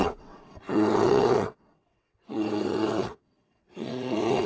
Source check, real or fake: fake